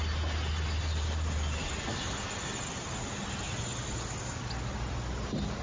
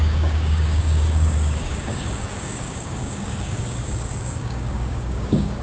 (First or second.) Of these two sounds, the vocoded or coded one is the second